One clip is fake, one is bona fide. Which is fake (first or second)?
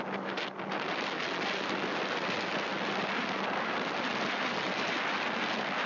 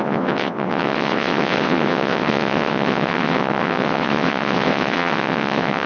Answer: second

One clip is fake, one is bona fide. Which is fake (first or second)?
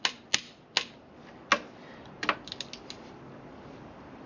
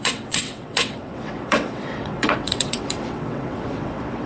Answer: second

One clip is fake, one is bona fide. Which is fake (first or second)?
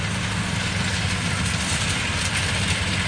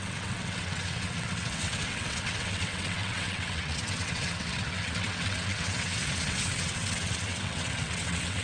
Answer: second